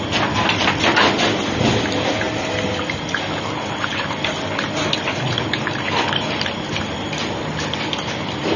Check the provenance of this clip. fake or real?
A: real